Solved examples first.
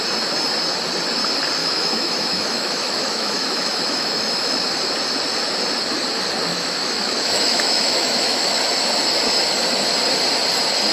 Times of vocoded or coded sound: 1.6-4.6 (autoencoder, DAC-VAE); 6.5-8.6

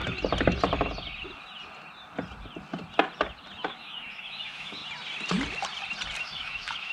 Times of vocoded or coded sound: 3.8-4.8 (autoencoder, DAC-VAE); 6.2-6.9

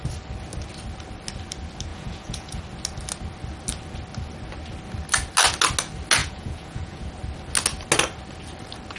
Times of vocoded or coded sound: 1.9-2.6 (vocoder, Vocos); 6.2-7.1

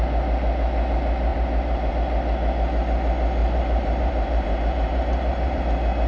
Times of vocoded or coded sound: 1.3-1.9 (vocoder, BigVGAN v2); 3.4-5.6